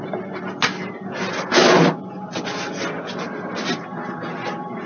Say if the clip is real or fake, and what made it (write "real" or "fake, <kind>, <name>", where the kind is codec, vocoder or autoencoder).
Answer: real